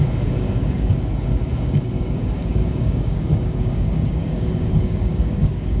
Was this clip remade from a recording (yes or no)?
yes